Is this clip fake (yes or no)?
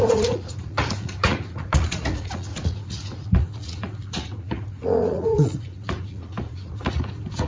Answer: yes